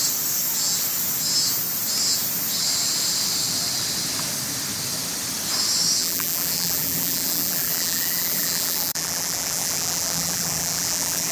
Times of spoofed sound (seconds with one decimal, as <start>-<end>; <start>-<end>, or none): 6.0-11.3